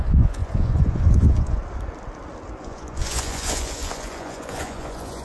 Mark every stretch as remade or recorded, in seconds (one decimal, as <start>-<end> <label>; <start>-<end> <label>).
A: 0.0-1.6 remade; 1.6-2.6 recorded; 2.6-5.2 remade